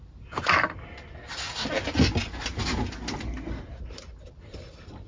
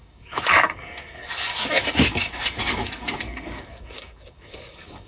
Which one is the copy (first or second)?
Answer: second